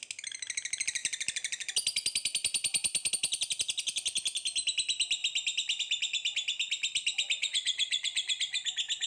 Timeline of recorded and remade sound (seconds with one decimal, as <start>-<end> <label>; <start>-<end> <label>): 0.0-7.4 recorded; 7.4-8.4 remade; 8.4-9.1 recorded